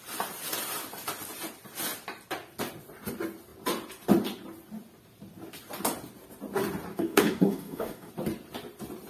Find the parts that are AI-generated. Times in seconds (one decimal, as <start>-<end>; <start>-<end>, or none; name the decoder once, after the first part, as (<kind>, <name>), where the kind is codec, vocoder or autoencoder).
6.9-8.1 (codec, DAC)